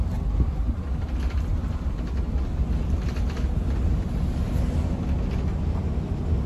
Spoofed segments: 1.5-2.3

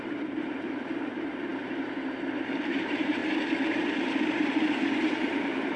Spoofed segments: 0.0-3.2; 4.3-5.8

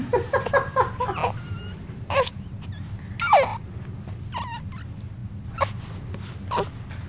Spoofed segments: none